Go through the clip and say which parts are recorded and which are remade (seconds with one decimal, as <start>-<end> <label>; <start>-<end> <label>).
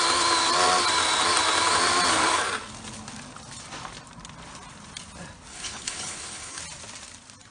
0.0-5.5 recorded; 5.5-6.6 remade; 6.6-7.5 recorded